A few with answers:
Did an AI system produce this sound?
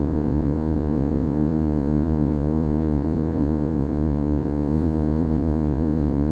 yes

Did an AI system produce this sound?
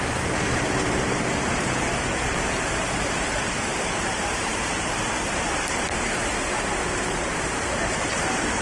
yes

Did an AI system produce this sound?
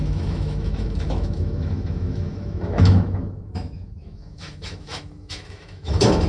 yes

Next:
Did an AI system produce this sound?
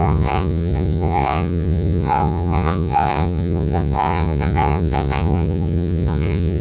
yes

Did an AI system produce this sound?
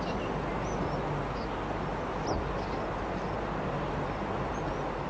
no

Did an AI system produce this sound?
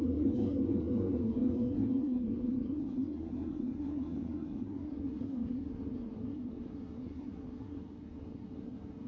yes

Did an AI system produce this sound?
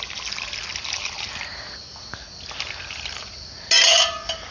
no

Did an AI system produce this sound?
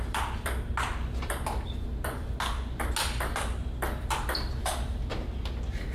no